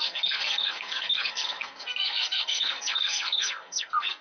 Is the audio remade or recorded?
remade